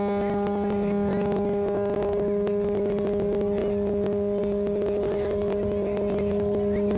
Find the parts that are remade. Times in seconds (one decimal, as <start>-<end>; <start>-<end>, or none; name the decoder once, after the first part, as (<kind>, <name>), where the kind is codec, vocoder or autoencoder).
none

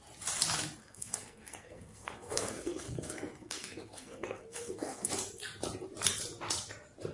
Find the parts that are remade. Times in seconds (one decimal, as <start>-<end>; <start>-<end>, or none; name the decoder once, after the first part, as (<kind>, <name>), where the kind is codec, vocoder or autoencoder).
0.8-5.1 (codec, SNAC)

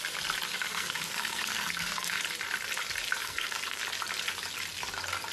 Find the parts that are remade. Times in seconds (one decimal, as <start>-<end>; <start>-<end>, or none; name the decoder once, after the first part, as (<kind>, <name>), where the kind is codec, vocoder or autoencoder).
0.7-2.2 (codec, SNAC); 3.2-3.8

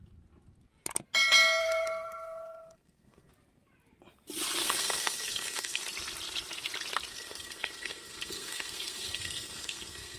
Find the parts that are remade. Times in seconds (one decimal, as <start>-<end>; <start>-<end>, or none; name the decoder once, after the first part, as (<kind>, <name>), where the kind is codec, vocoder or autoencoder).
1.6-3.3 (codec, SNAC); 4.6-5.8; 7.1-10.2

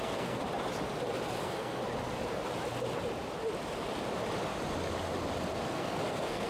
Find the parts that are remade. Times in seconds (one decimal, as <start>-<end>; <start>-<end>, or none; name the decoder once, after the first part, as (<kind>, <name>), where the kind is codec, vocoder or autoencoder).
0.0-0.4 (codec, SNAC); 1.4-1.8; 5.7-6.5

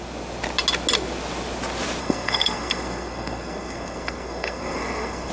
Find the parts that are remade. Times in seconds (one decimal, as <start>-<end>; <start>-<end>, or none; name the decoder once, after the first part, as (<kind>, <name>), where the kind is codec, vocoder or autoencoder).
2.0-5.3 (codec, SNAC)

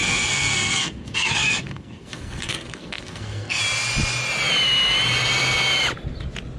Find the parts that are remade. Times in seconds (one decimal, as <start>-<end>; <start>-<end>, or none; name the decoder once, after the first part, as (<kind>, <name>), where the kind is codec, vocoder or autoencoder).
0.0-3.6 (codec, SNAC)